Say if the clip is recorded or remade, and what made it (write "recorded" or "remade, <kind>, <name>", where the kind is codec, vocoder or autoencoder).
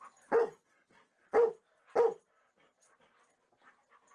recorded